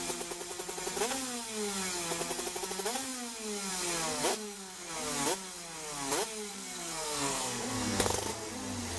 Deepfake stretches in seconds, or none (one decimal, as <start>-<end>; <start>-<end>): 4.3-4.9; 6.5-8.5